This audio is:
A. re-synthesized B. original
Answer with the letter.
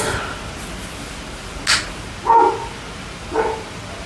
B